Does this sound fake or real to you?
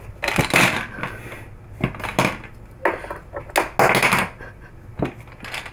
real